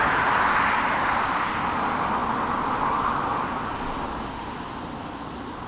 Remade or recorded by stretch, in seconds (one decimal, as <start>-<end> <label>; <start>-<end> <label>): 0.0-5.7 recorded